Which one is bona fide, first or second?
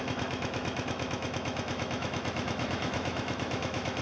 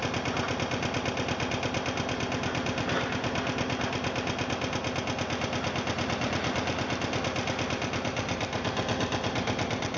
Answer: second